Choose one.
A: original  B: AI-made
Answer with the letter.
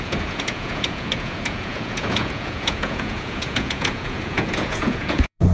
B